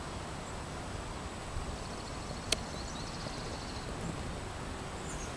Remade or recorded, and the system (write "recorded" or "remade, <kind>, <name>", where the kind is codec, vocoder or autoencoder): recorded